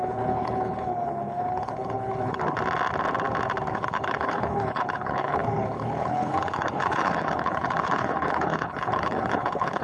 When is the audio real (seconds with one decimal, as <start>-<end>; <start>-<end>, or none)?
2.4-3.7